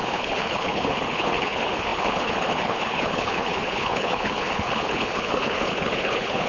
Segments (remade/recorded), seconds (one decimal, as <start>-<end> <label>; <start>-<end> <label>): 0.0-6.5 remade